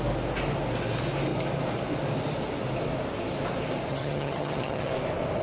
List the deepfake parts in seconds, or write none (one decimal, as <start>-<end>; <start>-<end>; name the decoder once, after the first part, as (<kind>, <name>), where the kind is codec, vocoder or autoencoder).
3.9-4.9 (vocoder, HiFi-GAN)